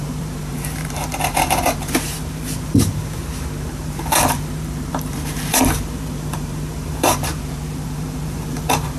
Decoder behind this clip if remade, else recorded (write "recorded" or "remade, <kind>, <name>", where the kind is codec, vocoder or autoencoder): remade, vocoder, BigVGAN v2